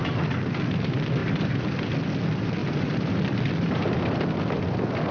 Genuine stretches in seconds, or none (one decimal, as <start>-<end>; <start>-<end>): 0.0-1.2; 2.0-2.6; 4.0-5.1